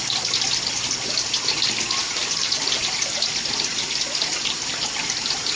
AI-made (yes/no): yes